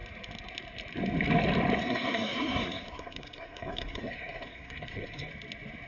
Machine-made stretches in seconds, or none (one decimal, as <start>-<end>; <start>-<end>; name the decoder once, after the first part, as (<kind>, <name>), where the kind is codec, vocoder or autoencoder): 1.8-5.3 (codec, SNAC)